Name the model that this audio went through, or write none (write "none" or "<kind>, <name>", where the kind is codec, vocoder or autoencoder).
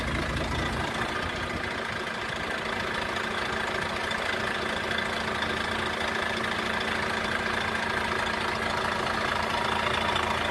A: none